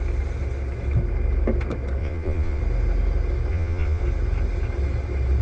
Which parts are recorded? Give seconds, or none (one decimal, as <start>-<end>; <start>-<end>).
0.0-2.0; 2.6-3.5; 4.0-5.4